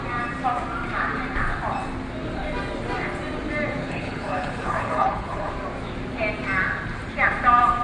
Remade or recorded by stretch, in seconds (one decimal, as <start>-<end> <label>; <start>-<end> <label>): 0.0-3.8 recorded; 3.8-5.5 remade; 5.5-7.8 recorded